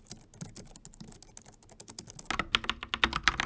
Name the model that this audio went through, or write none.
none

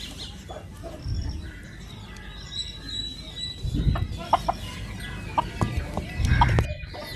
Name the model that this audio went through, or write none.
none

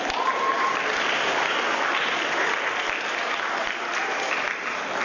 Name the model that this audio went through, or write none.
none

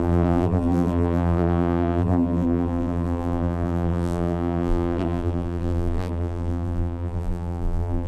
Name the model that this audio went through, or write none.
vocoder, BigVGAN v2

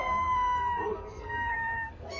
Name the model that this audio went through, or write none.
codec, SNAC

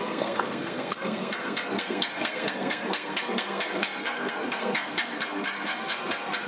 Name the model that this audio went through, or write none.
codec, SNAC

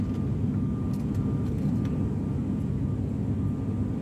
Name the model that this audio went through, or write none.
none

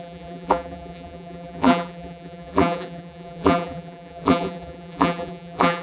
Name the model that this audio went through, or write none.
vocoder, BigVGAN v2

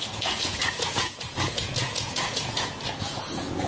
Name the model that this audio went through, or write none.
vocoder, Vocos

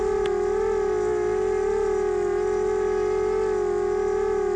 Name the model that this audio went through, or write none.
none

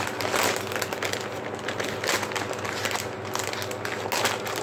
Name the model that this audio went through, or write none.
none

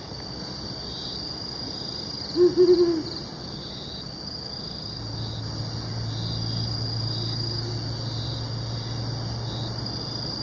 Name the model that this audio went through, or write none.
vocoder, BigVGAN v2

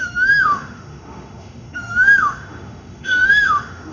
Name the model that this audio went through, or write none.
autoencoder, DAC-VAE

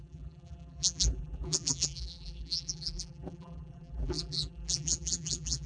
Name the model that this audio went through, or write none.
vocoder, BigVGAN v2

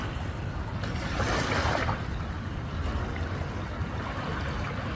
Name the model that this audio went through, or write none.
none